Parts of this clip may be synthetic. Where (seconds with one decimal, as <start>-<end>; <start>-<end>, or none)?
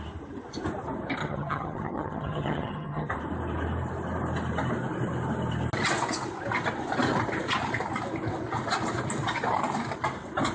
1.2-3.1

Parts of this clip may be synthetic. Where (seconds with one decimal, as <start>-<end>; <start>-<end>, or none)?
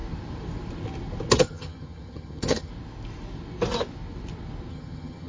1.4-2.7; 4.7-5.3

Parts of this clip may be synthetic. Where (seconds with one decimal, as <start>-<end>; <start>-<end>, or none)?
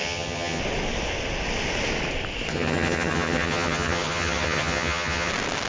0.0-0.6; 2.5-5.3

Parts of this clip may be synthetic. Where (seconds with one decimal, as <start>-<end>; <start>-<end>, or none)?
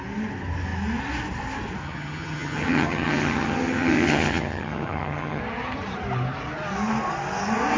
1.8-5.4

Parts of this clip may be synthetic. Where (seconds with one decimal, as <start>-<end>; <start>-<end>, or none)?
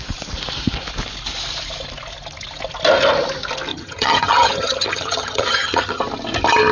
3.7-6.0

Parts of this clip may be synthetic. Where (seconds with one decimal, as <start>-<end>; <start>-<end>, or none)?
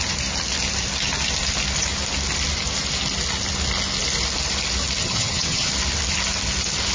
5.0-5.7